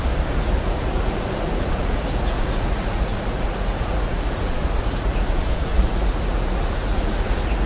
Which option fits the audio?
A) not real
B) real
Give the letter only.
A